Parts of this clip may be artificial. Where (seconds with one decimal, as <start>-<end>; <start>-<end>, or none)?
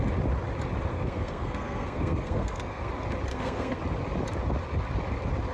0.9-2.9; 3.3-3.8